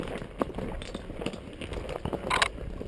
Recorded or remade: recorded